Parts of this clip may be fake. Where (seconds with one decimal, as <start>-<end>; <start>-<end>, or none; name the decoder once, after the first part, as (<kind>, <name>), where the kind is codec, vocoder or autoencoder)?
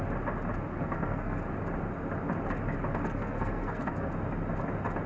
0.7-1.4 (codec, SNAC); 2.9-4.1